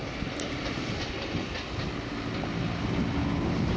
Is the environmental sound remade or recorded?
recorded